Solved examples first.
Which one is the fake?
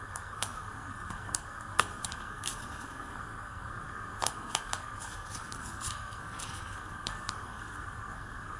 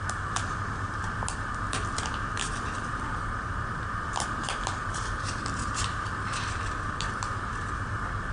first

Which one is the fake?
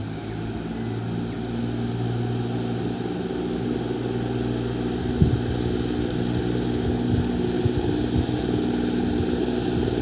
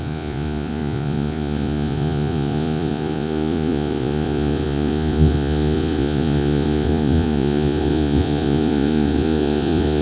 second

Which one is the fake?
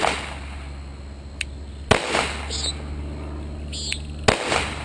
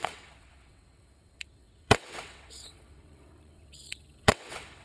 second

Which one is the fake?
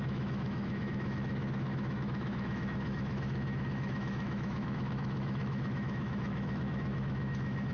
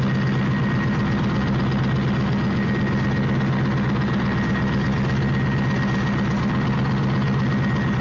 first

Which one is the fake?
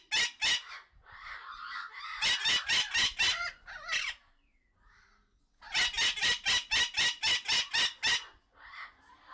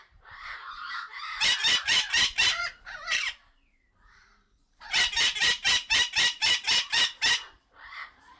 second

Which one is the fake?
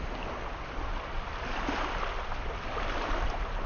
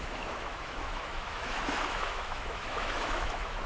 second